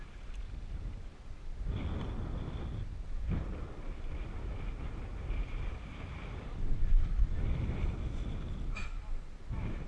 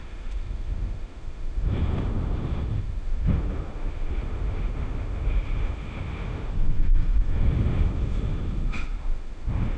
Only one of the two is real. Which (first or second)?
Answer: first